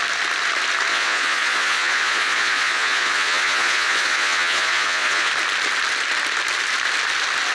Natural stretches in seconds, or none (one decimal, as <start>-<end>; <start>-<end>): 0.0-0.9; 5.3-7.5